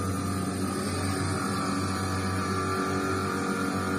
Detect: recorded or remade recorded